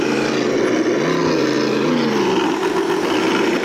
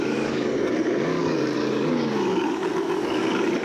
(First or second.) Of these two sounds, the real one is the first